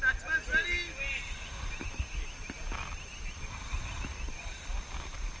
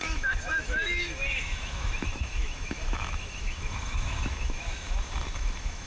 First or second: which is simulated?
second